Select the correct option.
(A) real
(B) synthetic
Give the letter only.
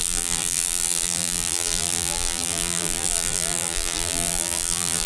B